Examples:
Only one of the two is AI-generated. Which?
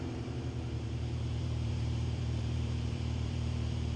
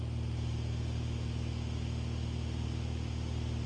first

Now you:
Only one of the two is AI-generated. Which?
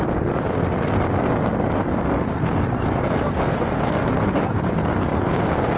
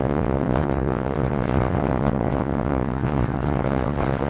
second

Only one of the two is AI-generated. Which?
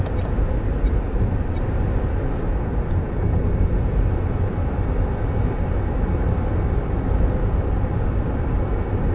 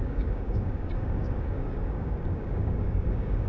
second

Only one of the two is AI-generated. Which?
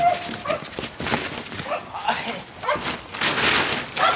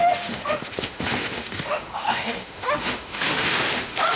second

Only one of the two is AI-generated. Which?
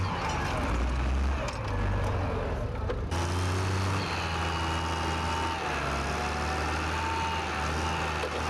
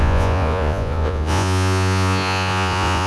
second